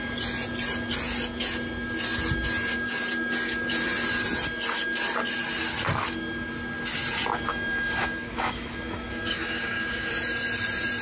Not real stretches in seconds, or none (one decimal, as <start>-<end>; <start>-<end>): 7.5-10.1